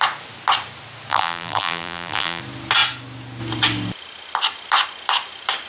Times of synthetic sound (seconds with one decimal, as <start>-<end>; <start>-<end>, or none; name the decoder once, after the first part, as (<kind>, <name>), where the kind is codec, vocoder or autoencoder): 1.1-2.4 (vocoder, BigVGAN v2)